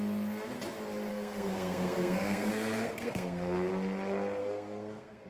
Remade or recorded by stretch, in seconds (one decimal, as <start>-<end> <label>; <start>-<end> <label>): 0.0-1.1 recorded; 1.1-3.7 remade; 3.7-4.4 recorded; 4.4-5.3 remade